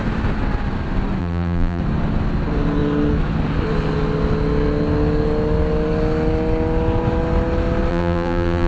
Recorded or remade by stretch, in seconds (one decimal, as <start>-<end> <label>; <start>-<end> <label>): 0.0-1.2 recorded; 1.2-1.8 remade; 1.8-7.9 recorded; 7.9-8.7 remade

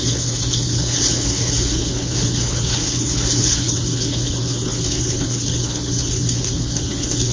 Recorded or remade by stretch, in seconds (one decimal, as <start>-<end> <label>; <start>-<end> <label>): 0.0-7.3 remade

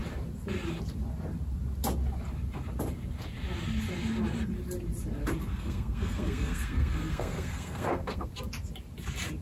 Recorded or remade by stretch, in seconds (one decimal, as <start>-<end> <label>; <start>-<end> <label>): 0.0-5.4 recorded; 5.4-8.3 remade; 8.3-9.4 recorded

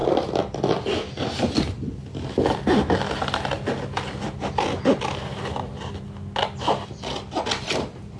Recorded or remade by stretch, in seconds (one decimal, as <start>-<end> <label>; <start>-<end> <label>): 0.0-8.2 recorded

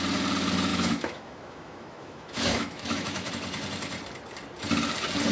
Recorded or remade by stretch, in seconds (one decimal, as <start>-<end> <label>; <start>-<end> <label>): 0.0-0.7 recorded; 0.7-3.3 remade; 3.3-5.3 recorded

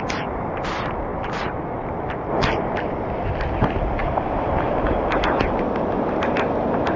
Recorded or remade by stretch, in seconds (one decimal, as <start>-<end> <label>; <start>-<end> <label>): 0.0-4.0 recorded; 4.0-5.4 remade; 5.4-7.0 recorded

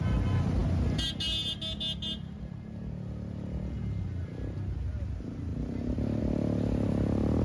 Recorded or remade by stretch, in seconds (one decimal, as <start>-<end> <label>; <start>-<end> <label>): 0.0-7.4 recorded